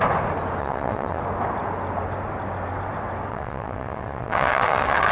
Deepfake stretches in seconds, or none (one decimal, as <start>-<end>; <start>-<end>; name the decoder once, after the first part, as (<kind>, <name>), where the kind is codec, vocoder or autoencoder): 0.6-1.2 (vocoder, WaveNeXt); 3.3-5.1